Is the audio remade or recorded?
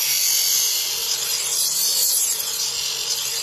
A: recorded